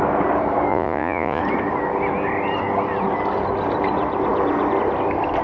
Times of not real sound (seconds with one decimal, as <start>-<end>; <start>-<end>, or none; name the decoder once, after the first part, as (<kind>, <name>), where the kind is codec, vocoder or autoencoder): 0.7-1.4 (vocoder, Vocos)